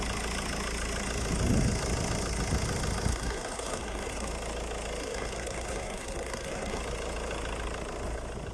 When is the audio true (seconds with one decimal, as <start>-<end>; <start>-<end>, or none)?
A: 0.0-3.1; 4.3-5.0; 6.8-8.5